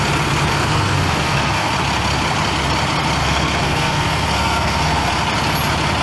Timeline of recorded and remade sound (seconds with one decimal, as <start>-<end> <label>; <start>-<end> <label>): 0.0-0.5 recorded; 0.5-1.7 remade; 1.7-3.2 recorded; 3.2-5.1 remade; 5.1-6.0 recorded